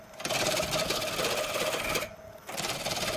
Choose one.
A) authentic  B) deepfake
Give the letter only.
A